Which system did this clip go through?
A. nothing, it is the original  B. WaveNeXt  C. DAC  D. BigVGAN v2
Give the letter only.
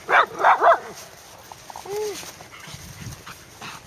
A